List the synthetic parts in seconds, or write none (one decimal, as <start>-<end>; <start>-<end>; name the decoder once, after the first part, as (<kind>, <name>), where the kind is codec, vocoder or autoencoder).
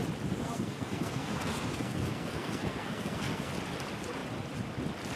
0.4-3.5 (codec, SNAC)